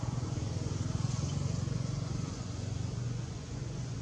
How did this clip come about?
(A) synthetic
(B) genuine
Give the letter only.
A